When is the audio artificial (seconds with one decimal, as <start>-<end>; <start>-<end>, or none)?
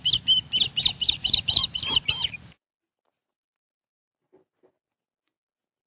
none